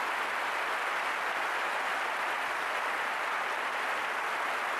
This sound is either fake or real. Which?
real